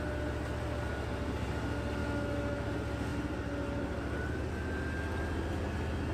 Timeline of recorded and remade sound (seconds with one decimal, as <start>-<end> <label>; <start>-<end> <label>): 0.0-2.0 recorded; 2.0-2.7 remade; 2.7-6.1 recorded